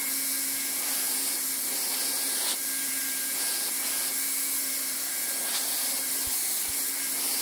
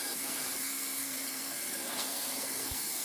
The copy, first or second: second